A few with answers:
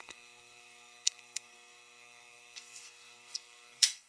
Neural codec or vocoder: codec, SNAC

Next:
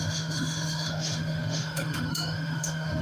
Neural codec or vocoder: autoencoder, DAC-VAE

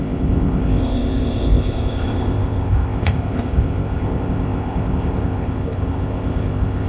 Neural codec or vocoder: codec, ZipCodec